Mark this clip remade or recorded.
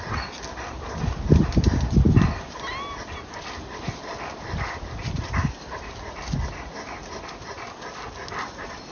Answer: recorded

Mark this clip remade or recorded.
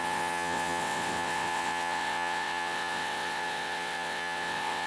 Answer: remade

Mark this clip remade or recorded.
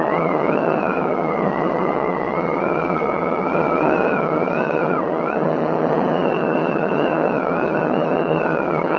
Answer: remade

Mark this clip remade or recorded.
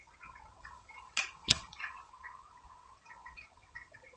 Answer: remade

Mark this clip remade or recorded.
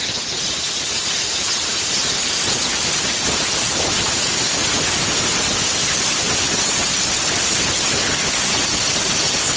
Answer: recorded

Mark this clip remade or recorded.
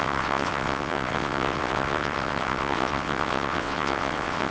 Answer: remade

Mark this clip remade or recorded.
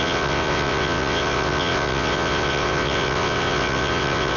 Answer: remade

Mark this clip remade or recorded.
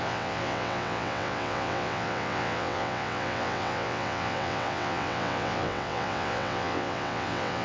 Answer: remade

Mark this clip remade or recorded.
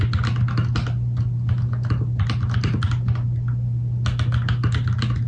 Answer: recorded